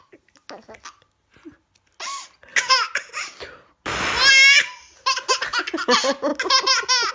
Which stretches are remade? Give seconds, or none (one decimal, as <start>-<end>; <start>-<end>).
none